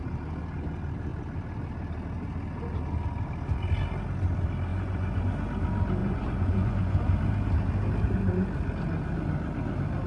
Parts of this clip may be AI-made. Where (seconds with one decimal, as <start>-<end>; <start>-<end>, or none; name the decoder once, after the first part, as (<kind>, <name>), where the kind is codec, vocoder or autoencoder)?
4.7-5.3 (vocoder, Vocos); 6.0-7.0